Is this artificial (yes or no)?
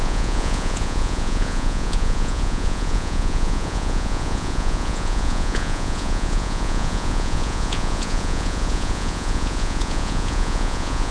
yes